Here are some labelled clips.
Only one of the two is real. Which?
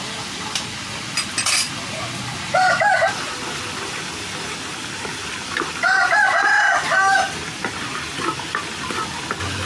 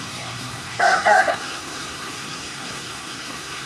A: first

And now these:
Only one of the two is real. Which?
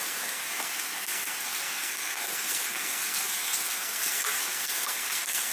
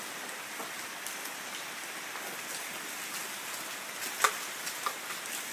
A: second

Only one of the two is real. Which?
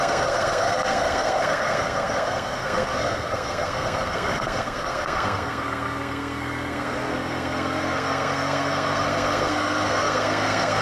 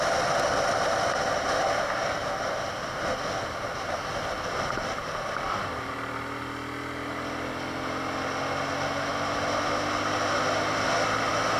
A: second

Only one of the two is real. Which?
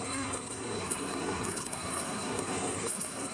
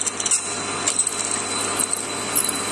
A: second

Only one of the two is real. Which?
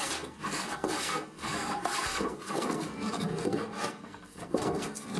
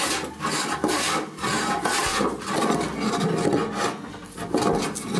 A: second